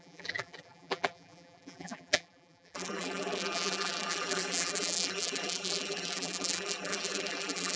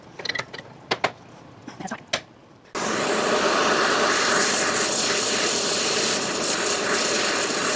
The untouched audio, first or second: second